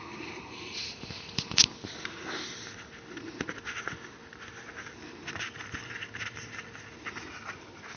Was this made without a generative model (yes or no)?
yes